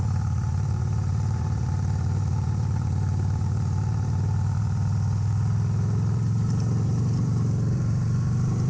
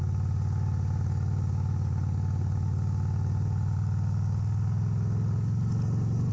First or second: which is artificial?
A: first